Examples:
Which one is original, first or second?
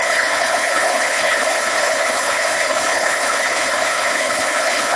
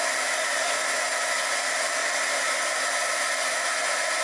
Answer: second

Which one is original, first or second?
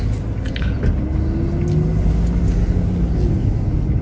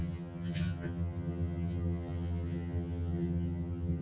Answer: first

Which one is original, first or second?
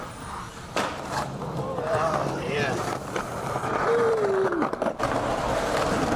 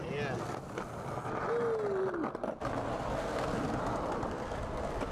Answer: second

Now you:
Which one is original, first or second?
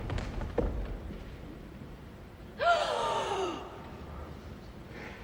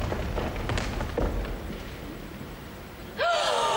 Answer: second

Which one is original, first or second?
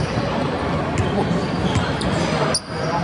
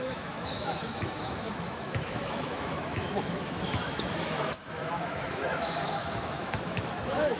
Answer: first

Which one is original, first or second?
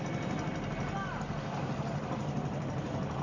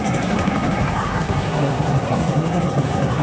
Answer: first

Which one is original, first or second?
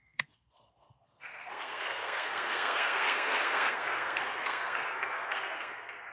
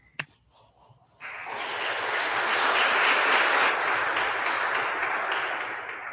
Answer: second